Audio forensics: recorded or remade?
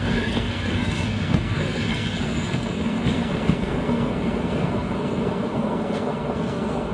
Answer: remade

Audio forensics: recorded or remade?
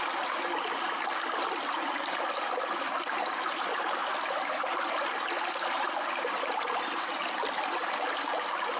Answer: recorded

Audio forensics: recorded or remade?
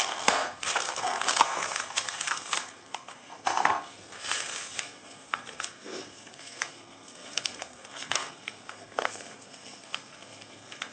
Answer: remade